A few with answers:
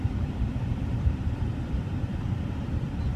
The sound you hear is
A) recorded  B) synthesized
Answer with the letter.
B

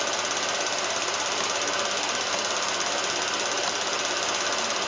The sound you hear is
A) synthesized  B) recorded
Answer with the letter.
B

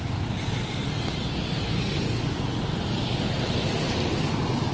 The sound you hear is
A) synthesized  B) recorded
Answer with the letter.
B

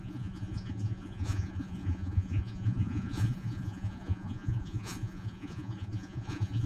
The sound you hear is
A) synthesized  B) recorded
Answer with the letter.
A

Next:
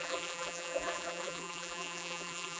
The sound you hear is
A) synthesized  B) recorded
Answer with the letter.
A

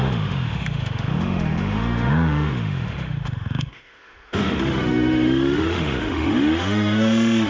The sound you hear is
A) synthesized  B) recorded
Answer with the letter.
A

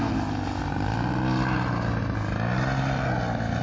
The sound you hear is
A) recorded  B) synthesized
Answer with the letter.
A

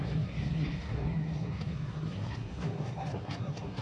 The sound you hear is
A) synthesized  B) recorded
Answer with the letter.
A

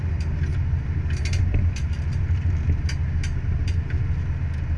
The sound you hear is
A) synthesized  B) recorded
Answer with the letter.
B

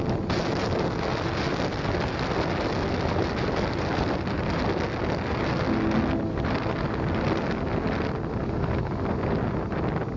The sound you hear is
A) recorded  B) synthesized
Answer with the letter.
A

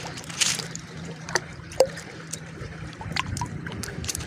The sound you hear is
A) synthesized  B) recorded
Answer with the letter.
A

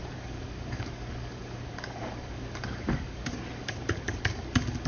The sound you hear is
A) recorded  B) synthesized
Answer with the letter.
B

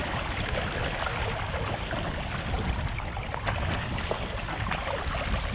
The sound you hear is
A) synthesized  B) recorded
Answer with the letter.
B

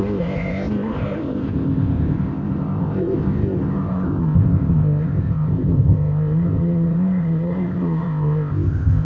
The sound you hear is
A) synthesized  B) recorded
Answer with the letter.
A